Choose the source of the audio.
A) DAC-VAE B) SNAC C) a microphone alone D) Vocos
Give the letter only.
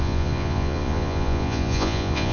D